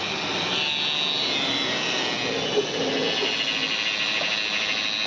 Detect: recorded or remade recorded